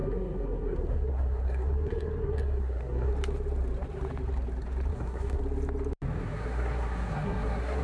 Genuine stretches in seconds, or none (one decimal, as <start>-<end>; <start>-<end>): 3.1-4.9; 5.4-6.2